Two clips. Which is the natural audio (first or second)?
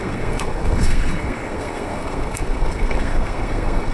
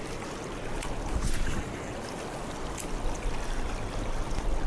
second